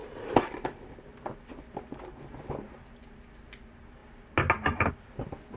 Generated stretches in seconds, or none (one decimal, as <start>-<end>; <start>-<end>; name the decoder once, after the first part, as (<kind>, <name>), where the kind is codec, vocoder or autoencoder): none